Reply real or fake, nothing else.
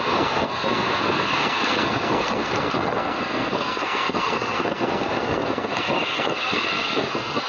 fake